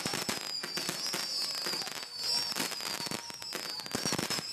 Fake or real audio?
real